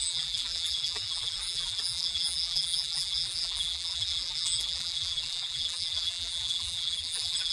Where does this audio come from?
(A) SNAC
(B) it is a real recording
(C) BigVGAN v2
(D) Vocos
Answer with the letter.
C